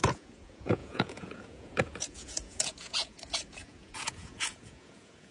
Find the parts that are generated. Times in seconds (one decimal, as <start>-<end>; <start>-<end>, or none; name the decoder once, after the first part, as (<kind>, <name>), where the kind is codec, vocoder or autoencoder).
0.0-5.3 (vocoder, Vocos)